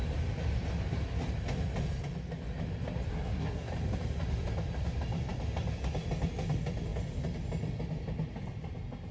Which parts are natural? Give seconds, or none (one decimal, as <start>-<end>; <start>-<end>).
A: 0.0-3.1; 3.7-9.1